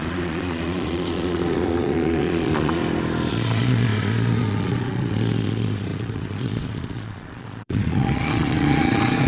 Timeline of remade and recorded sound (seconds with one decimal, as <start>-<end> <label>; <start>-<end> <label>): 0.0-2.8 remade; 2.8-3.3 recorded; 3.3-9.3 remade